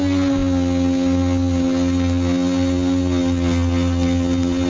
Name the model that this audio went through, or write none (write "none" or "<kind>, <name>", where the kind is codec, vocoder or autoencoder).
none